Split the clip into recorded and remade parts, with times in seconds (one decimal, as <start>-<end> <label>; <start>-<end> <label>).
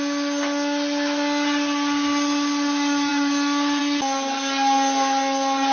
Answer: 0.0-5.7 recorded